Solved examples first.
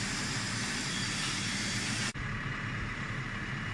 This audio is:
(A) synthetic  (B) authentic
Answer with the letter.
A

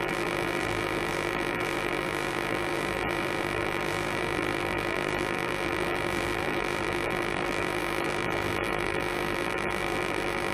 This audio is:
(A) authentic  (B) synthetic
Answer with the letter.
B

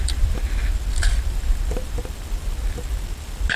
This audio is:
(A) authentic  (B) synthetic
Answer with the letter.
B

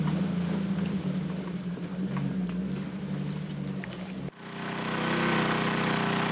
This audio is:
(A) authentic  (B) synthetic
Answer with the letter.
A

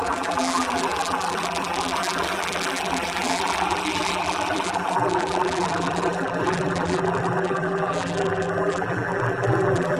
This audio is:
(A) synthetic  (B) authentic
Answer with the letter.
A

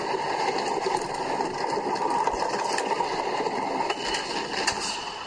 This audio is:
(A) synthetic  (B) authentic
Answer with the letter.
B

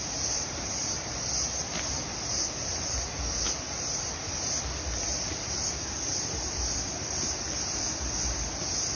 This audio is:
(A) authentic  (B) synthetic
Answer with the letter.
B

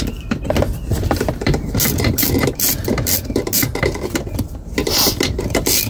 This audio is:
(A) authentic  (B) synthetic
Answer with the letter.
B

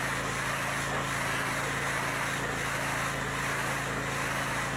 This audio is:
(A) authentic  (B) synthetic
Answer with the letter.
A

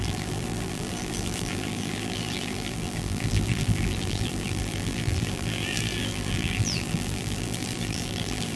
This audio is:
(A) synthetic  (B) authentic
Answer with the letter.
A